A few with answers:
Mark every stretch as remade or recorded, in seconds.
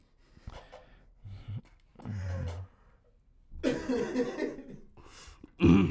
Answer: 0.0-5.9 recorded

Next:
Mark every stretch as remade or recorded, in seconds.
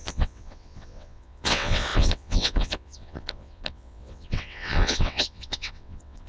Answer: 0.0-6.3 remade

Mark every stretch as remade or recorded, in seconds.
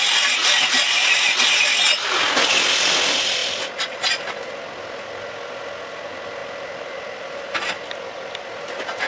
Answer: 0.0-9.1 recorded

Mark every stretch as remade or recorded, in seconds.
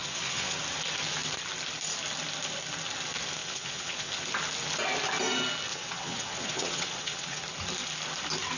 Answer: 0.0-0.6 remade; 0.6-3.4 recorded; 3.4-4.1 remade; 4.1-5.7 recorded; 5.7-7.4 remade; 7.4-8.6 recorded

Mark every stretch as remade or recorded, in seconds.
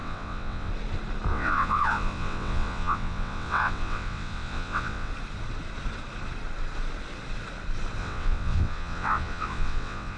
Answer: 0.0-0.7 remade; 0.7-1.3 recorded; 1.3-5.1 remade; 5.1-8.0 recorded; 8.0-10.2 remade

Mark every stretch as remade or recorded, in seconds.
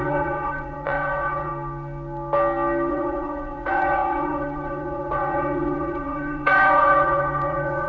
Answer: 0.0-1.5 remade; 1.5-2.9 recorded; 2.9-7.9 remade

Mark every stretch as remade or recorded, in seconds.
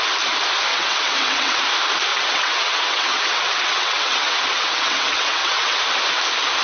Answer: 0.0-0.7 recorded; 0.7-1.6 remade; 1.6-2.1 recorded; 2.1-5.8 remade; 5.8-6.6 recorded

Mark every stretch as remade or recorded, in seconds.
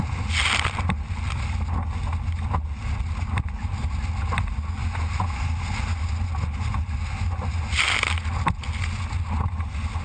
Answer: 0.0-10.0 recorded